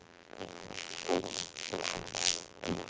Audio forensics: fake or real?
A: fake